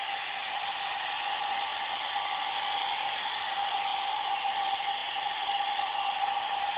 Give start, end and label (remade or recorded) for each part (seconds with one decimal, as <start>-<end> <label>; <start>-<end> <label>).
0.0-1.7 recorded; 1.7-2.4 remade; 2.4-3.9 recorded; 3.9-4.4 remade; 4.4-6.8 recorded